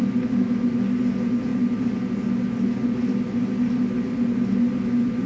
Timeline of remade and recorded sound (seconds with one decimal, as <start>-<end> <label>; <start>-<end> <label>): 0.0-5.3 recorded